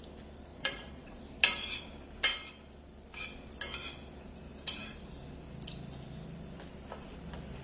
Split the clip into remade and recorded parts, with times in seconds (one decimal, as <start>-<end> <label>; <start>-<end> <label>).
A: 0.0-0.5 recorded; 0.5-1.2 remade; 1.2-7.6 recorded

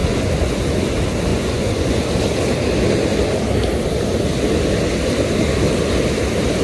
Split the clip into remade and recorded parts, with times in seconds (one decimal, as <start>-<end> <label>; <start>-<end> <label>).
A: 0.0-0.6 remade; 0.6-1.3 recorded; 1.3-2.1 remade; 2.1-6.6 recorded